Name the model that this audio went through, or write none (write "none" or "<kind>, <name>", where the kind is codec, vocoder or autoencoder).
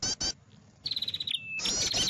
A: none